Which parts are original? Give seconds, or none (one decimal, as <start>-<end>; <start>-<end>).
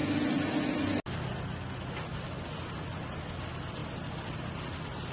0.0-5.1